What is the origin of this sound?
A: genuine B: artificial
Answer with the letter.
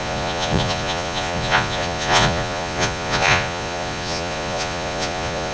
B